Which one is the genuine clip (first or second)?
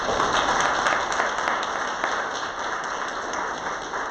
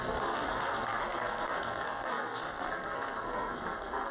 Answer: first